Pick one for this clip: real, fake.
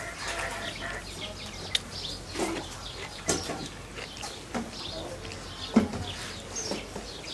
real